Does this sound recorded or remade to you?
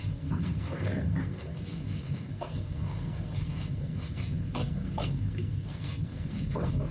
remade